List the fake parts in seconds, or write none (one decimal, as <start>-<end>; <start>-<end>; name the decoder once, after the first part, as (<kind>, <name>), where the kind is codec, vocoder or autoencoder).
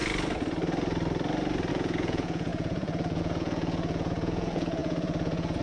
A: 1.7-5.6 (vocoder, Vocos)